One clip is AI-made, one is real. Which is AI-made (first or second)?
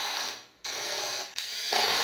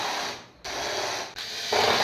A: first